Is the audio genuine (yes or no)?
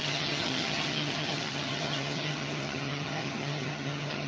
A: no